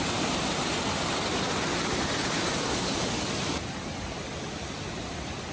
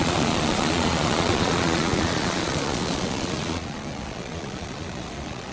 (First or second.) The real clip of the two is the first